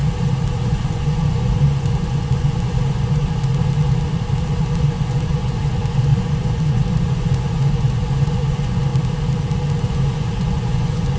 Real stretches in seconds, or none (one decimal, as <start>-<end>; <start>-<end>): 0.0-0.6; 3.5-4.8; 8.9-9.8